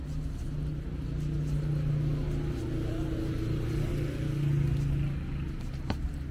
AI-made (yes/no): no